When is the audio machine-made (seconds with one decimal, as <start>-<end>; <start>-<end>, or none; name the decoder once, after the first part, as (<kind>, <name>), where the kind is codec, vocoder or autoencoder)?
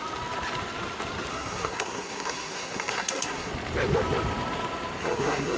1.3-3.5 (codec, SNAC); 5.0-5.6